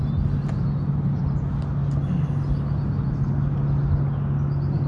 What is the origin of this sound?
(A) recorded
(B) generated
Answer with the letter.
A